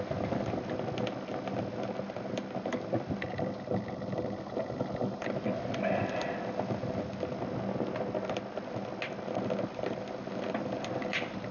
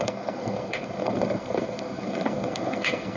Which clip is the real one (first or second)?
first